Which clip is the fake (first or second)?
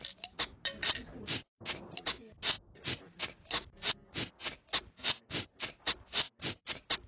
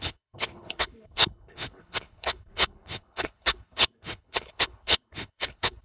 second